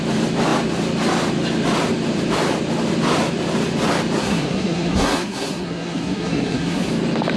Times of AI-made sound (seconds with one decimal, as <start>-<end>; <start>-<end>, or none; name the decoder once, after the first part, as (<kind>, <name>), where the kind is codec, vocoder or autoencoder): 4.2-6.9 (codec, SNAC)